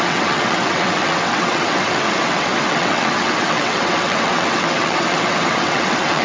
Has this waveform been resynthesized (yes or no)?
yes